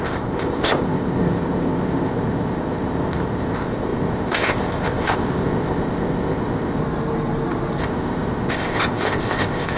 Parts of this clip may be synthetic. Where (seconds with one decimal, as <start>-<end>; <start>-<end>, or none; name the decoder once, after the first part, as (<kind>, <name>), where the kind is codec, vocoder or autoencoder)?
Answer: 0.0-6.8 (codec, ZipCodec); 7.8-9.8